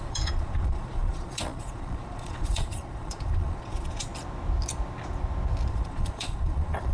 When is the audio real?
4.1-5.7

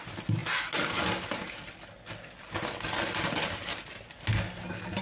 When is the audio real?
0.0-5.0

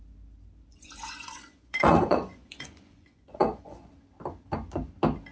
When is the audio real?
0.0-0.7; 3.9-5.3

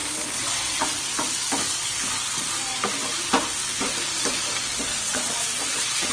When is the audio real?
0.0-4.9

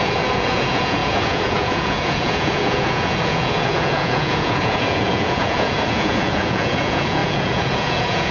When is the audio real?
none

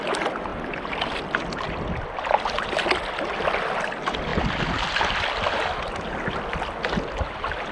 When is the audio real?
0.0-7.7

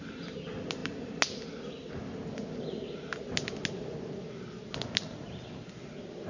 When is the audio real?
0.0-6.3